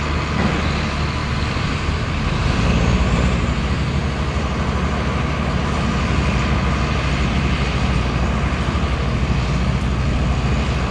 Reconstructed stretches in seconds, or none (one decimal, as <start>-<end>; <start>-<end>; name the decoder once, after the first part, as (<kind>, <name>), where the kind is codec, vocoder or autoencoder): 1.2-3.7 (vocoder, BigVGAN v2)